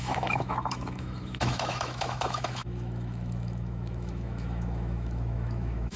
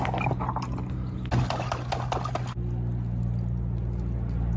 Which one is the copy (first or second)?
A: first